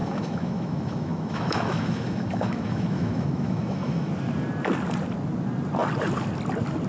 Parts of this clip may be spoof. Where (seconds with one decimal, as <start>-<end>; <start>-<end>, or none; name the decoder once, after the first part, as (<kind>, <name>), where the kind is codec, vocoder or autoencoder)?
0.0-4.1 (autoencoder, DAC-VAE)

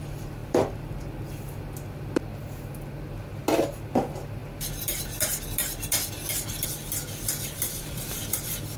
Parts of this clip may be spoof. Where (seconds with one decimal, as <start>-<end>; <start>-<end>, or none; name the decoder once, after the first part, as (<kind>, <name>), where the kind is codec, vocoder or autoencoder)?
0.0-2.3 (vocoder, BigVGAN v2); 3.5-8.8

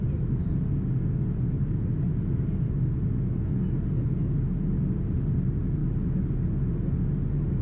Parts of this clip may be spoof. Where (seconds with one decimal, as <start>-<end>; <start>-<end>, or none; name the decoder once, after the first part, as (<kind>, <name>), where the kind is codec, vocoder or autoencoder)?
none

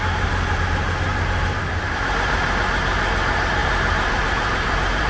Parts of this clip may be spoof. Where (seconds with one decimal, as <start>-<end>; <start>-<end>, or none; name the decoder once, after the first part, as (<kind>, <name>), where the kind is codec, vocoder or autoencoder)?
1.1-1.9 (vocoder, BigVGAN v2); 3.6-5.1

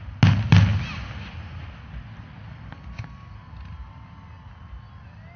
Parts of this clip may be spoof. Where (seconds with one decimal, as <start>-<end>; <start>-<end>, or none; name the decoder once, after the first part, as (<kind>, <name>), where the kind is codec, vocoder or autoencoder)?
none

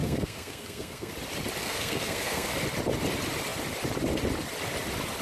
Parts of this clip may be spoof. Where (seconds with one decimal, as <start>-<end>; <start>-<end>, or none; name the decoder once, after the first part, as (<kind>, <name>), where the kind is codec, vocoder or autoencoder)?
0.0-1.1 (codec, SNAC); 1.6-2.5

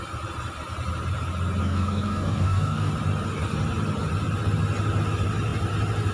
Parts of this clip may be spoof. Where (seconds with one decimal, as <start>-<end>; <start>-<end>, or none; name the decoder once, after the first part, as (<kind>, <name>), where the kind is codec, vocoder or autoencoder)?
1.6-2.9 (codec, DAC)

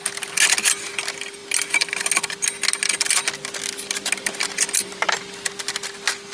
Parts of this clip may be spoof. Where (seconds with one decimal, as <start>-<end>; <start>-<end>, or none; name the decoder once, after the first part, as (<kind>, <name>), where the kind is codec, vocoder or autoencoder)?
none